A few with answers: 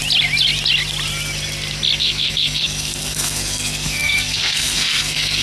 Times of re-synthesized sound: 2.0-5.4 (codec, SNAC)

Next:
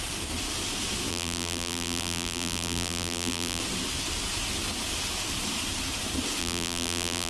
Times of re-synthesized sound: 1.1-3.6 (vocoder, BigVGAN v2); 6.4-7.3

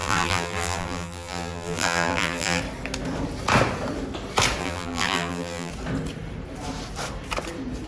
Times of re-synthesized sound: 0.0-2.6 (vocoder, BigVGAN v2); 4.6-5.7